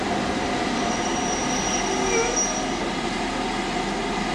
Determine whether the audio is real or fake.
real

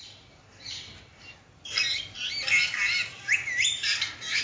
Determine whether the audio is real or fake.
real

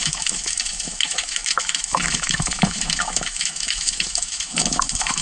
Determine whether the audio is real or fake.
fake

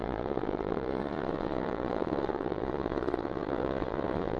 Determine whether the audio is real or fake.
fake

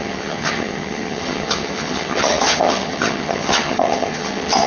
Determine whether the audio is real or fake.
fake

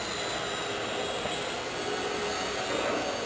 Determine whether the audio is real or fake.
real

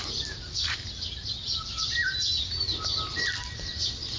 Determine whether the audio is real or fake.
real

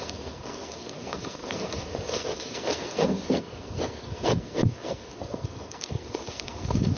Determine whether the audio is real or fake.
fake